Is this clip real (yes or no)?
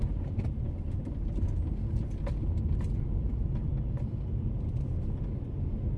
yes